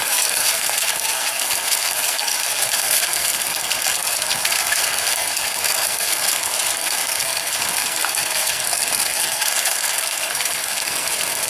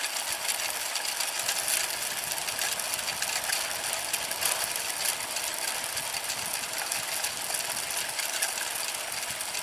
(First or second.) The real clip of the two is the second